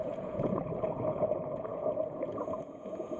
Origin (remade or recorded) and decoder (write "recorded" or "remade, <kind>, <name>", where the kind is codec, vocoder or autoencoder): remade, vocoder, Vocos